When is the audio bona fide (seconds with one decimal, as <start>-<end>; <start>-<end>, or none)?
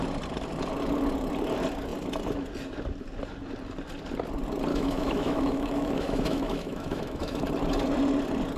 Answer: 0.0-4.7; 7.4-8.6